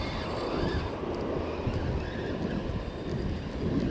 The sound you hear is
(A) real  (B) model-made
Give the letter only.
A